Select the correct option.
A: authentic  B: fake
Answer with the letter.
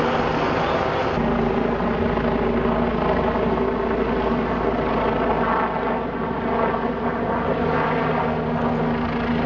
A